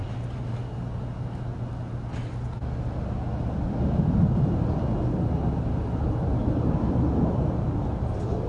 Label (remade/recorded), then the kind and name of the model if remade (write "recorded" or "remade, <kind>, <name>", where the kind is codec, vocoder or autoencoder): recorded